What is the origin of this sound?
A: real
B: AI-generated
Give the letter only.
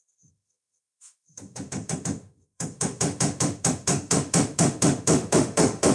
B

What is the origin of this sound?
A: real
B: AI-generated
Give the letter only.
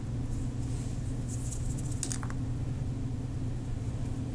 A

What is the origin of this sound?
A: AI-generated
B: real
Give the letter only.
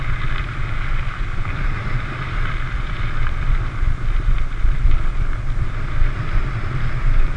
A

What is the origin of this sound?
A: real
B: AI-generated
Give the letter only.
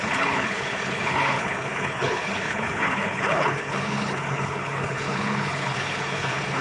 B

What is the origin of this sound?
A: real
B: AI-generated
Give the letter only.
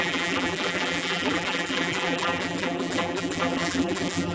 B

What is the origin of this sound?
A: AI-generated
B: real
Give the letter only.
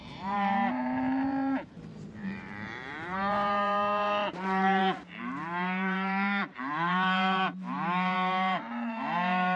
A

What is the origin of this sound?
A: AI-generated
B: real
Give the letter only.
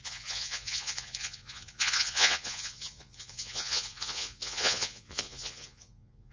A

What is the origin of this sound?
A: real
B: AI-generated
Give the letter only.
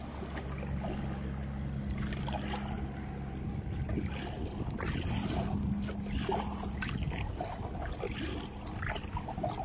A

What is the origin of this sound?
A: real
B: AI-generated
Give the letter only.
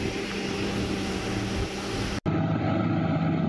A